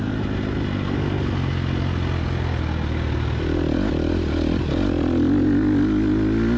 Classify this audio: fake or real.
real